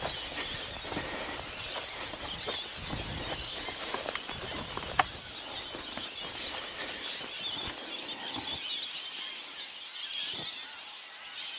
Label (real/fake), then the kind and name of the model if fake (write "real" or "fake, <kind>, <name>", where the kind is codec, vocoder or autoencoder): real